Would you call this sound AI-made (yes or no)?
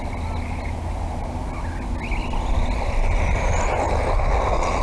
no